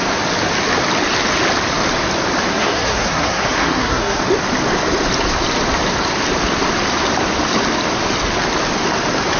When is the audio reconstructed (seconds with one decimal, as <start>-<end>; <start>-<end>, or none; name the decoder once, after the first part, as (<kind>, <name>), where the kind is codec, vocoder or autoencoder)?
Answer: 2.5-4.2 (codec, SNAC)